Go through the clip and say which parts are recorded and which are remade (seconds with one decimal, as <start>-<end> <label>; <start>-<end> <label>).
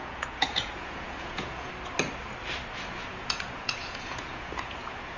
0.0-1.7 remade; 1.7-3.1 recorded; 3.1-5.2 remade